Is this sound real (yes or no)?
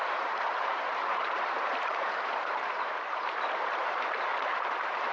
no